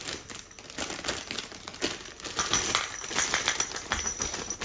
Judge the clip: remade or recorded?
recorded